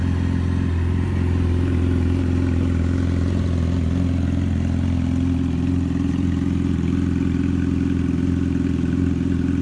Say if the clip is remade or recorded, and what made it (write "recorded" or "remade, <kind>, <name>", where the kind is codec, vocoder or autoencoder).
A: recorded